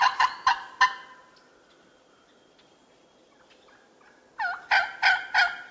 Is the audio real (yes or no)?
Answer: yes